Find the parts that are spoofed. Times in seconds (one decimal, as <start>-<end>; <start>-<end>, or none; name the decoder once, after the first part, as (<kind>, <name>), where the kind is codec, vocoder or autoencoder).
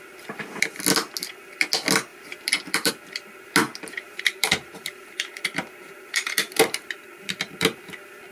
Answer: 2.1-2.9 (vocoder, BigVGAN v2); 3.7-7.4